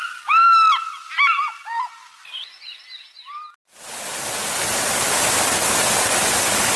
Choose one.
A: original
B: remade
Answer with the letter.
A